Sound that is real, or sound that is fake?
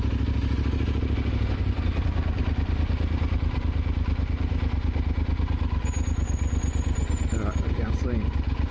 real